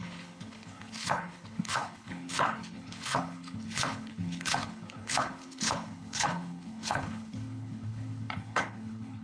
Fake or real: fake